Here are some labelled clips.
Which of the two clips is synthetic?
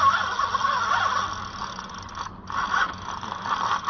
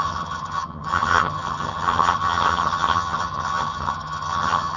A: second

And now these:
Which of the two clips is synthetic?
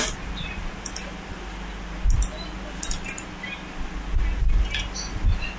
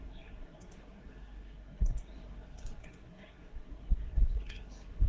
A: second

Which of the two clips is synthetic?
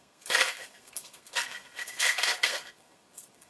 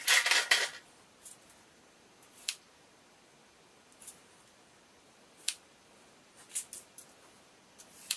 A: first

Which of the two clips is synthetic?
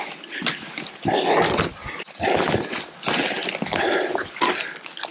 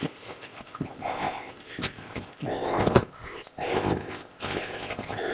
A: second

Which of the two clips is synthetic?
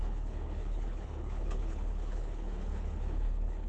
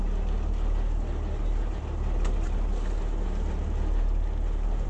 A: first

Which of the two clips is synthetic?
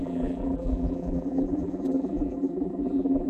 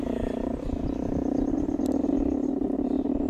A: first